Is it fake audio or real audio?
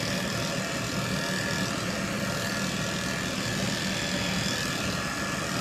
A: real